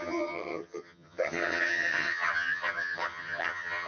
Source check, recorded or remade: remade